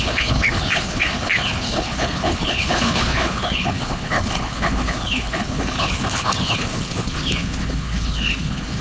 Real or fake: fake